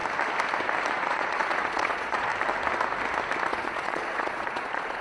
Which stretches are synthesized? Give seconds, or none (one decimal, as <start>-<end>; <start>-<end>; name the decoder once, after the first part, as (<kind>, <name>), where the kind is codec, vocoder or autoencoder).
0.9-2.3 (vocoder, Vocos); 3.5-5.0